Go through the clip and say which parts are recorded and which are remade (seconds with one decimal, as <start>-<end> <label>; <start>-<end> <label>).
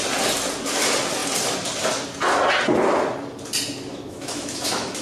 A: 0.0-3.9 recorded; 3.9-5.0 remade